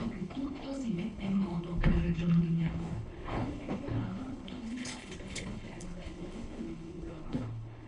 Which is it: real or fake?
fake